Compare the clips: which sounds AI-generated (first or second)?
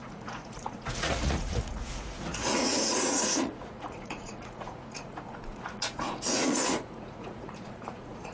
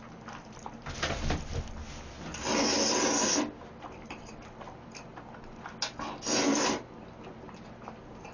first